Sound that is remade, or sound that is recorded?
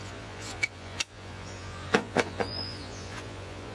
remade